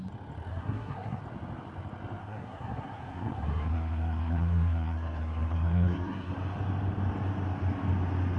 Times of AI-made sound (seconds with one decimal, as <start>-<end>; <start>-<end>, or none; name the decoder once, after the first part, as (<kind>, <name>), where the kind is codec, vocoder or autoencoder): 0.5-1.2 (codec, SNAC); 2.2-6.3